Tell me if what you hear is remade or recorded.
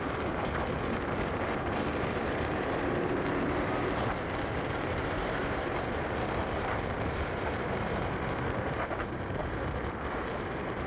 remade